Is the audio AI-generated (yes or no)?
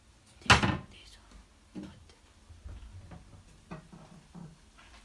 no